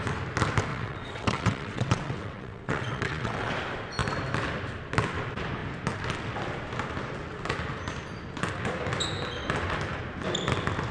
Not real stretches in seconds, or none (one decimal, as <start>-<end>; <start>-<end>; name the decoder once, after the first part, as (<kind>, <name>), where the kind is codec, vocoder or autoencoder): 0.7-3.5 (vocoder, WaveNeXt)